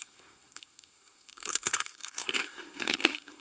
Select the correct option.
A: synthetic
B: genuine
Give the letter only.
A